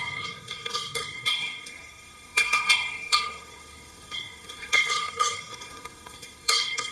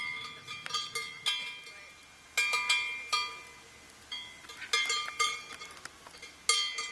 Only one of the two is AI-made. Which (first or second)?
first